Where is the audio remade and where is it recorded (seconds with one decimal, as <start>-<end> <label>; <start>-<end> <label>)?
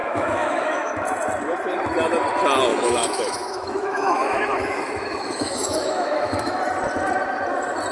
0.0-0.9 remade; 0.9-2.7 recorded; 2.7-6.6 remade; 6.6-7.9 recorded